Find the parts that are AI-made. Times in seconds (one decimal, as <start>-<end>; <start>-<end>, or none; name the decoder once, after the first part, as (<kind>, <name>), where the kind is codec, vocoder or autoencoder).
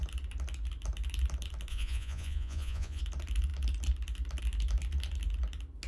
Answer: 1.7-3.0 (vocoder, Vocos)